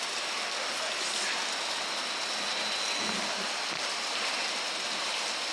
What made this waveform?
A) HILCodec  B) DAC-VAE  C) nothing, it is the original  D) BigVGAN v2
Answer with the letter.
C